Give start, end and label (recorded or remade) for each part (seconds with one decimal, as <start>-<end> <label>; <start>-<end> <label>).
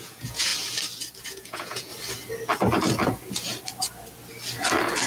0.0-0.5 remade; 0.5-1.2 recorded; 1.2-1.9 remade; 1.9-5.1 recorded